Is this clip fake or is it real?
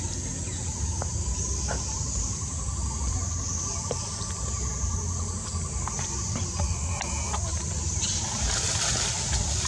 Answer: real